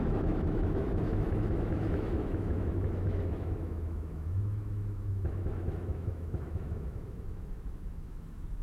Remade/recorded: remade